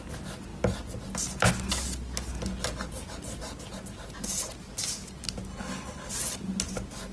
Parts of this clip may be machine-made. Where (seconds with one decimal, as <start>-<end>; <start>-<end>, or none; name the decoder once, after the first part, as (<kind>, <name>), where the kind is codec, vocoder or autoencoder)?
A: 5.5-6.1 (codec, HILCodec)